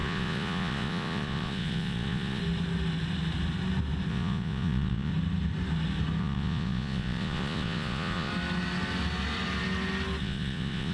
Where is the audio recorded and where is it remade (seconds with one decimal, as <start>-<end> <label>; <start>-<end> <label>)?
0.0-2.4 remade; 2.4-4.1 recorded; 4.1-5.1 remade; 5.1-6.2 recorded; 6.2-8.3 remade; 8.3-10.2 recorded; 10.2-10.9 remade